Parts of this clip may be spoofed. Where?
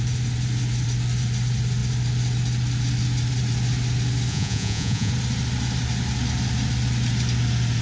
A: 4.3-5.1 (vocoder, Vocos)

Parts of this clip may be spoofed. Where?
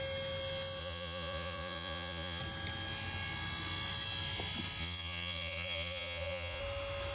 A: 0.8-2.4 (vocoder, Vocos); 4.8-6.6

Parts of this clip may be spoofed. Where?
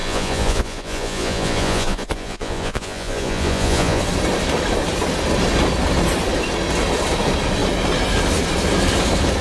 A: 0.0-4.0 (vocoder, Vocos)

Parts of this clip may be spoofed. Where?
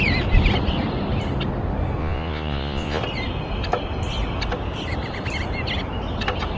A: 2.0-3.0 (vocoder, Vocos)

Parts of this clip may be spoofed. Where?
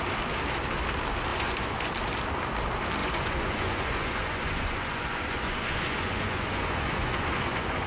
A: 1.3-1.9 (vocoder, Vocos); 3.0-7.9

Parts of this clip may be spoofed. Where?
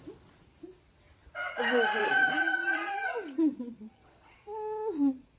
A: 2.0-5.4 (vocoder, Vocos)